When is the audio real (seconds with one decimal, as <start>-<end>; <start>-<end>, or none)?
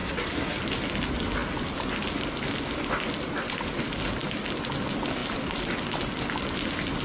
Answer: 0.6-7.0